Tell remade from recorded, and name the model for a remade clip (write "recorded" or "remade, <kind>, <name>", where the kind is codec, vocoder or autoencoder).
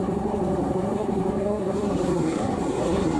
remade, codec, SNAC